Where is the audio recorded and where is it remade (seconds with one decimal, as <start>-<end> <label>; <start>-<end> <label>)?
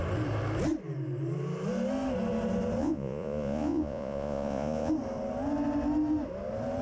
0.0-2.8 recorded; 2.8-4.9 remade; 4.9-6.8 recorded